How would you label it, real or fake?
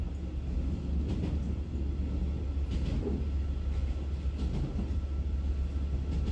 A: real